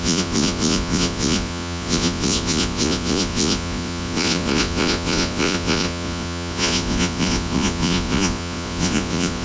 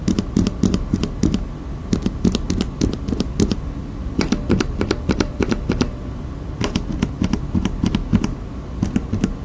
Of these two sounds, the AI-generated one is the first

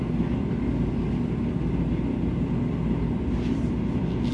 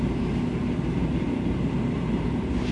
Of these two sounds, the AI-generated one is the second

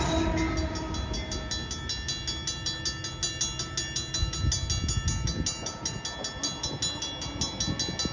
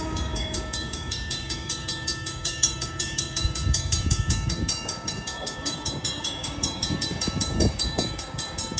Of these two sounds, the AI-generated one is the second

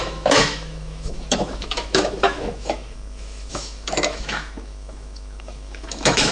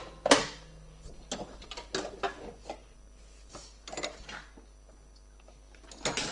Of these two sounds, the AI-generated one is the first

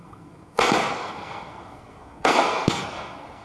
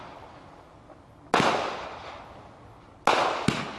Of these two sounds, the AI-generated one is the first